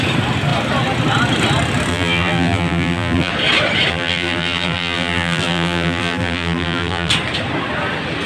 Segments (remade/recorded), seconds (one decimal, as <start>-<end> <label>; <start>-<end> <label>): 0.0-1.9 recorded; 1.9-3.3 remade; 3.3-3.9 recorded; 3.9-7.1 remade; 7.1-8.3 recorded